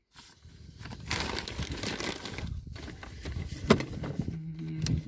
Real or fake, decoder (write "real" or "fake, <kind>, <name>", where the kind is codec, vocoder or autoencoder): real